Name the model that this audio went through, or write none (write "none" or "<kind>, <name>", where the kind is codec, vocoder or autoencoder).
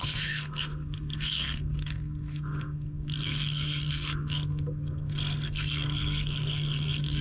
codec, SNAC